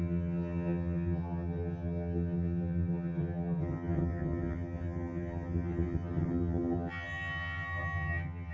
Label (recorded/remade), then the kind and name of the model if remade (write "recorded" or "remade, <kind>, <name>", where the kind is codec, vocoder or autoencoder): remade, vocoder, HiFi-GAN